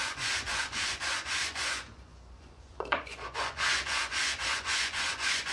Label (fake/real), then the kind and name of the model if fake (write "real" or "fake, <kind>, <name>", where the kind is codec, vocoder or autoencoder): fake, vocoder, Vocos